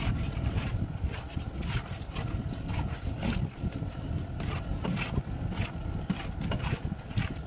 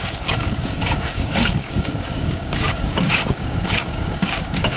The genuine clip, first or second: first